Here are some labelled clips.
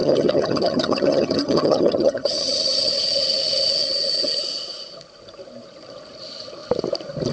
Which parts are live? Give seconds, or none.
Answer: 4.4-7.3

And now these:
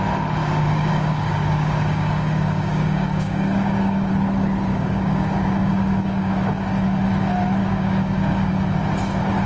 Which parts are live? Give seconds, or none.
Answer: 0.0-0.4; 4.1-4.7; 6.6-7.6; 8.5-9.5

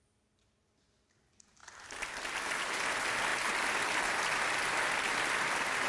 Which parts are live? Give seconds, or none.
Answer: 0.0-5.9

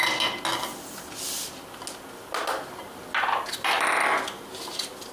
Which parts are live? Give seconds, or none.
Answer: 0.0-5.1

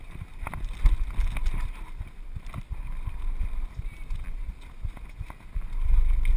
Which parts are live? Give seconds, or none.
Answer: 0.0-6.4

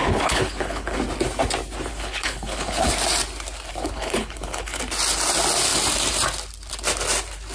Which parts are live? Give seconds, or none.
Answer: 1.0-1.9; 2.9-3.7; 4.8-7.5